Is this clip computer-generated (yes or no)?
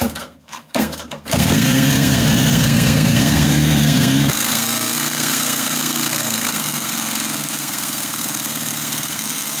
yes